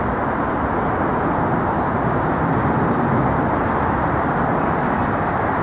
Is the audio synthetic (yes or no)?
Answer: no